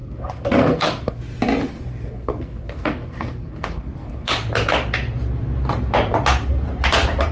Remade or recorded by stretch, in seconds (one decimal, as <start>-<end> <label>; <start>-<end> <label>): 0.0-1.2 remade; 1.2-1.7 recorded; 1.7-4.3 remade; 4.3-7.3 recorded